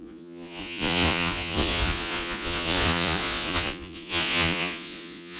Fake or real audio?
fake